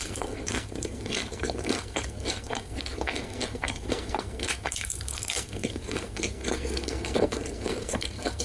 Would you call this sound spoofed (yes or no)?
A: yes